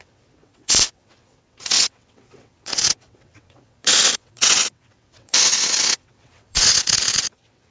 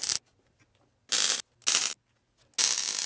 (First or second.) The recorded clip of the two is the second